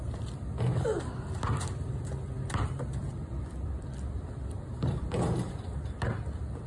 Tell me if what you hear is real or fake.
fake